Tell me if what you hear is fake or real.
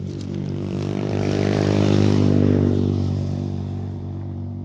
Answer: fake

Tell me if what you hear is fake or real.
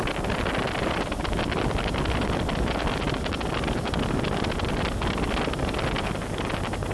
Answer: real